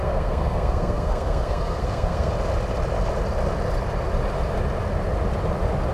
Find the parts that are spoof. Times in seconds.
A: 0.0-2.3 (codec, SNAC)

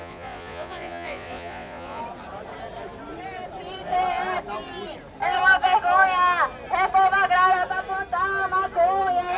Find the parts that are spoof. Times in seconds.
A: 0.0-2.0 (vocoder, Vocos)